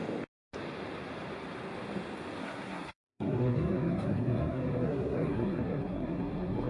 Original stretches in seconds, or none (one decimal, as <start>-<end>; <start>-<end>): 0.0-2.4